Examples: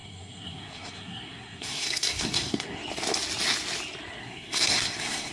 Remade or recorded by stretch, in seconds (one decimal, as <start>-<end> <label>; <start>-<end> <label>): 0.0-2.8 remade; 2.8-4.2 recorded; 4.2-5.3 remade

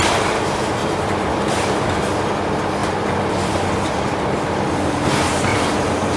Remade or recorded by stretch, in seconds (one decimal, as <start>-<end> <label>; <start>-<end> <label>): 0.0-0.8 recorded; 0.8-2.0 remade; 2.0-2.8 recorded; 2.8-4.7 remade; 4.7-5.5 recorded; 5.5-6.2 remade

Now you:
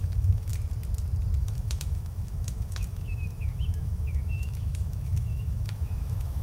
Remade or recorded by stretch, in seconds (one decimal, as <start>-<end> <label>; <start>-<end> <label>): 0.0-0.5 remade; 0.5-1.4 recorded; 1.4-6.4 remade

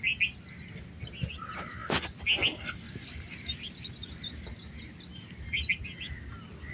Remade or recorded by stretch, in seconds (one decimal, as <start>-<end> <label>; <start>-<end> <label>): 0.0-6.7 recorded

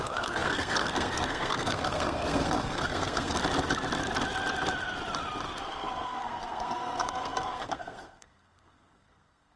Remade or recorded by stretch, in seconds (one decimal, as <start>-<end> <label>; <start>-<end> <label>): 0.0-3.4 remade; 3.4-5.6 recorded; 5.6-9.6 remade

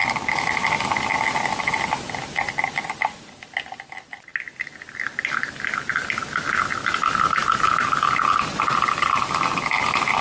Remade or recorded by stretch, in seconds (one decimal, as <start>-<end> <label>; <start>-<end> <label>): 0.0-10.2 recorded

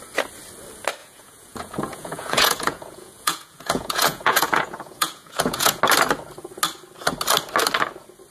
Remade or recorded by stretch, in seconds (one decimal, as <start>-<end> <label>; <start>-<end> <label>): 0.0-1.0 recorded; 1.0-5.8 remade; 5.8-8.3 recorded